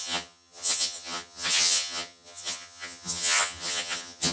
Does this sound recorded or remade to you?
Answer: remade